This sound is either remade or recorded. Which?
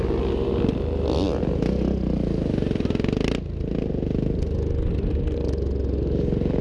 recorded